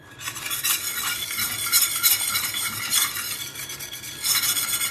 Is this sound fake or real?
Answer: fake